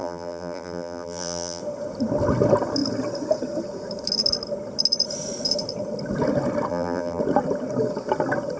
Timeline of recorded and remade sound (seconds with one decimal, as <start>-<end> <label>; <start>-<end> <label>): 0.0-1.6 remade; 1.6-6.7 recorded; 6.7-7.2 remade; 7.2-8.6 recorded